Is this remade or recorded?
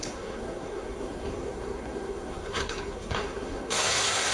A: remade